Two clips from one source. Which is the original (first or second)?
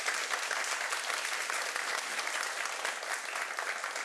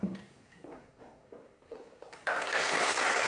first